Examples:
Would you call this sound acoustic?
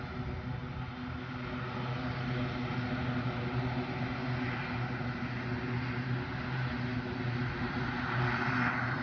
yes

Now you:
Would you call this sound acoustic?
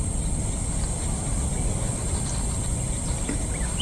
yes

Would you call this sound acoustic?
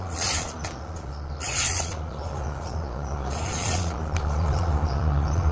no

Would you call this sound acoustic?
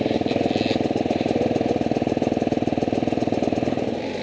yes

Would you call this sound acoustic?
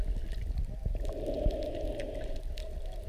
yes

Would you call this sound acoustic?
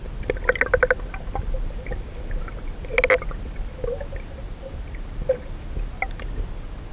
yes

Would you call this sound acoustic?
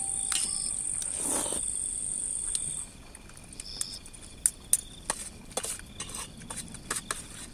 yes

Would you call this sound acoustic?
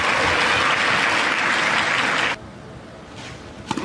yes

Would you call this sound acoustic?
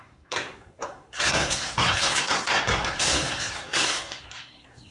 no